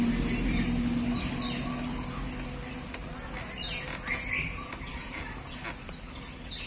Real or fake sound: real